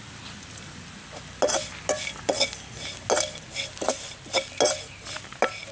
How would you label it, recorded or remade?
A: recorded